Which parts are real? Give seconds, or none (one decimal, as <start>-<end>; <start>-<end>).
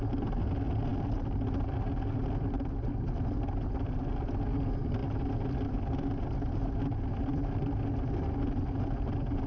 0.0-9.5